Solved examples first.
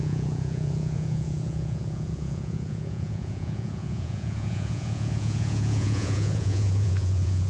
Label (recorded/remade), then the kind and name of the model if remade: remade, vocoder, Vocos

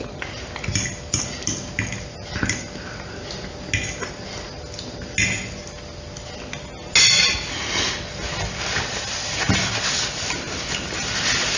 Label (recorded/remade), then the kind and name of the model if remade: recorded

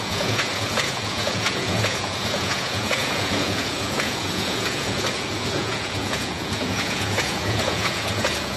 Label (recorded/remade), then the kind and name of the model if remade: remade, vocoder, Vocos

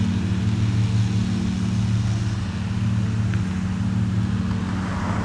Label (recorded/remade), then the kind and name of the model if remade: recorded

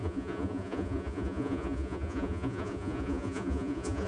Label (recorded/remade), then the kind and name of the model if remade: remade, vocoder, Vocos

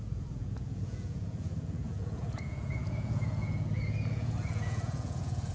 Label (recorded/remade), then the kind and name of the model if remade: remade, vocoder, Vocos